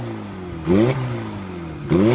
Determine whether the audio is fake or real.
real